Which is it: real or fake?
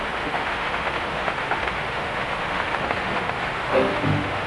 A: fake